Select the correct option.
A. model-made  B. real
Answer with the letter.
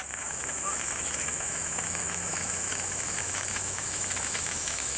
A